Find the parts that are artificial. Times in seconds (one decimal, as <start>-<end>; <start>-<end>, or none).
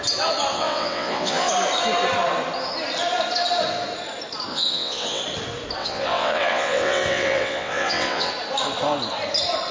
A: 0.5-1.5; 4.5-5.2; 5.8-8.3